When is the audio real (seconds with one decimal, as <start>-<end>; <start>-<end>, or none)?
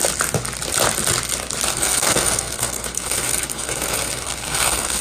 0.0-1.7